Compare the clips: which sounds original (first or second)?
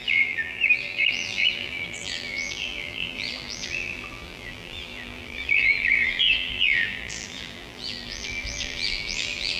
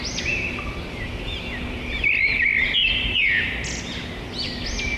second